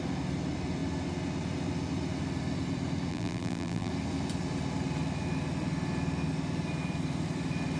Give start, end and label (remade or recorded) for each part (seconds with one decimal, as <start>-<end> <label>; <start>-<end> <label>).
0.0-3.1 recorded; 3.1-3.9 remade; 3.9-7.8 recorded